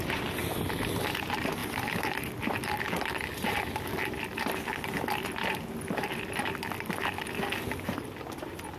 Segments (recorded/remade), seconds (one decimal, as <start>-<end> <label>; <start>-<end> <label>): 0.0-8.8 recorded